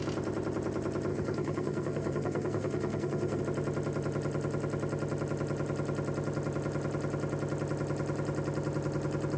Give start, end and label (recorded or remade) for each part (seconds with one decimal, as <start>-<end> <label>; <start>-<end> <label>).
0.0-1.1 recorded; 1.1-3.4 remade; 3.4-9.4 recorded